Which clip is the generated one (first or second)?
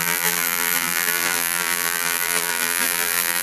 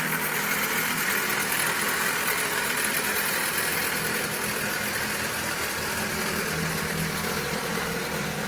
first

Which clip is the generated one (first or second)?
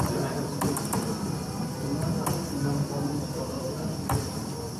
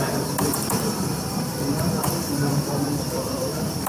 second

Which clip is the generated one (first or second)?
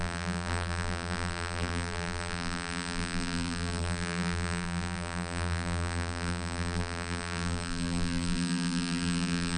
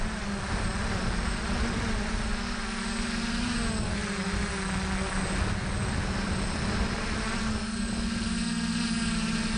first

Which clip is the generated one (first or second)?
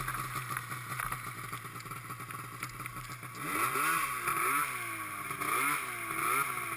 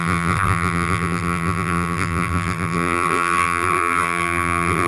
second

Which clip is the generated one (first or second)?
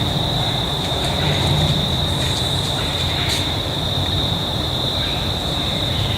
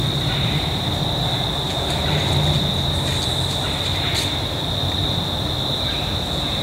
first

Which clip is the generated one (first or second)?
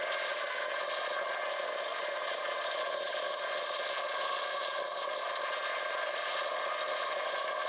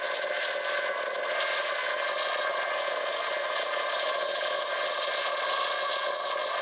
first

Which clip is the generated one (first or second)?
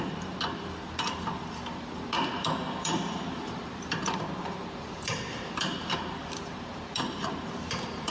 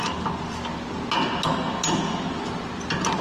first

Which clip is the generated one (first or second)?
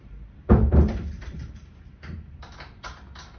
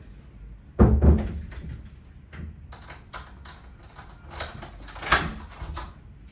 first